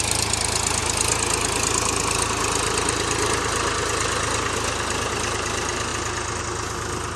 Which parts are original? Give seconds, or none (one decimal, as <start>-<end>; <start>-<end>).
0.0-7.2